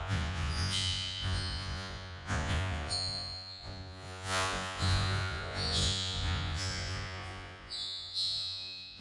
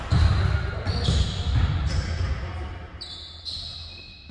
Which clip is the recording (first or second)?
second